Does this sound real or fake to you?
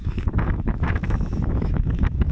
fake